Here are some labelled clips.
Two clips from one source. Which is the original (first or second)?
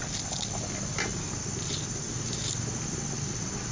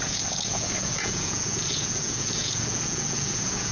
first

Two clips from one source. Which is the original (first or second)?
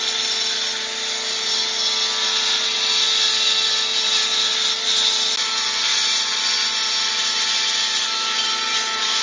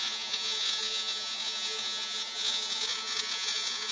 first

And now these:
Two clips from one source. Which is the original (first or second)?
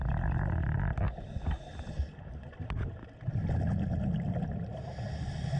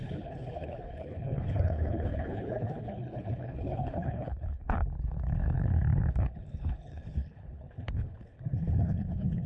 first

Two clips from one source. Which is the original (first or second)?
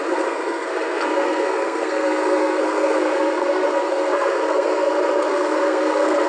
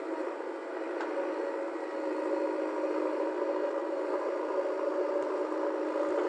second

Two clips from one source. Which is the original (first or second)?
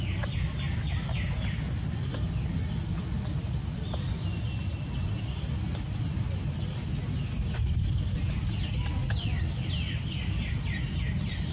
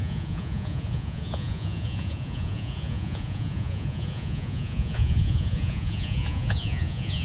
first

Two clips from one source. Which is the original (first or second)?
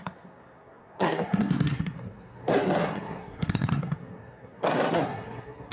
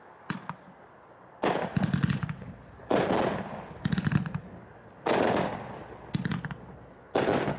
second